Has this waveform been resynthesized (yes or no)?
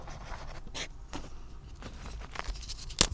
no